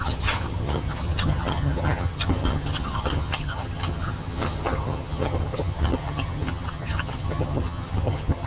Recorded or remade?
remade